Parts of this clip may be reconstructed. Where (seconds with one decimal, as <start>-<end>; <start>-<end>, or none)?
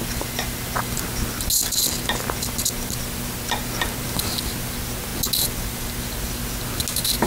none